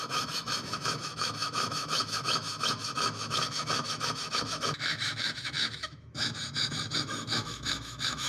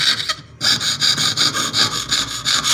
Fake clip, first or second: first